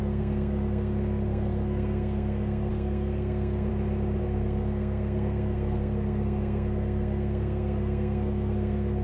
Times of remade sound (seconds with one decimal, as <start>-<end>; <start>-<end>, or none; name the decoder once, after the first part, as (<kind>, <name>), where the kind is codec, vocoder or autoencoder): 0.0-3.7 (codec, SNAC); 4.2-9.0